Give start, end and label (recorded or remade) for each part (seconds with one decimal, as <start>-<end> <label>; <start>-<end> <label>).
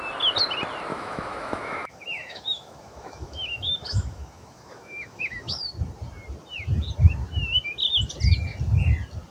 0.0-0.9 recorded; 0.9-5.7 remade; 5.7-9.3 recorded